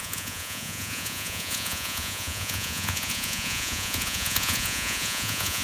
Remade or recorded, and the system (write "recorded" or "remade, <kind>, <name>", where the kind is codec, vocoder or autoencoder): remade, vocoder, Vocos